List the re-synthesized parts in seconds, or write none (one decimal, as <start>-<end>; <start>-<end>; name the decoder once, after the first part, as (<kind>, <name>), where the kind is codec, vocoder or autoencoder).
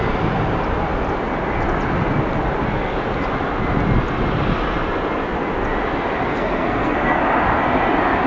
6.3-7.2 (codec, SNAC)